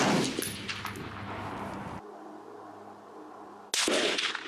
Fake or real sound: real